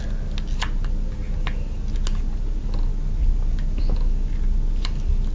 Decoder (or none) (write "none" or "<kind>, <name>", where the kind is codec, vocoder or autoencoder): none